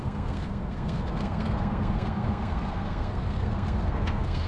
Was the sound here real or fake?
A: fake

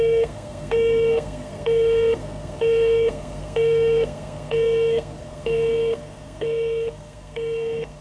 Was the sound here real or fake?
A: fake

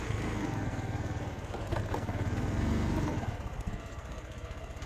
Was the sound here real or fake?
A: fake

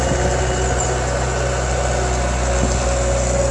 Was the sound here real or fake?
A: real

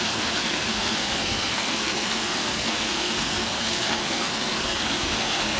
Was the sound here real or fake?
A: fake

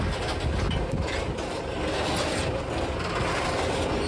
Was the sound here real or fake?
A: real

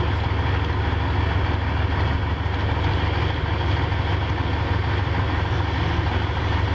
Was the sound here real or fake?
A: real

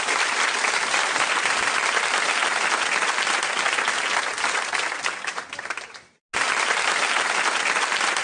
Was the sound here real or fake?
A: real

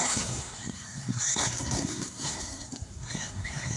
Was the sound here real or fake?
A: fake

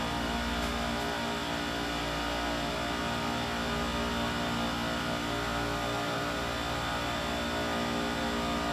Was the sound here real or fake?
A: real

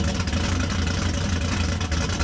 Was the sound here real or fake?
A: real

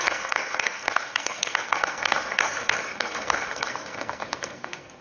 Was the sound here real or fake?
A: fake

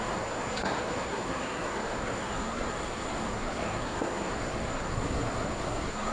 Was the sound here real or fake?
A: fake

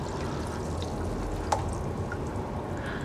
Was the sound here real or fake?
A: real